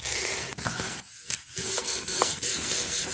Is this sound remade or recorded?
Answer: remade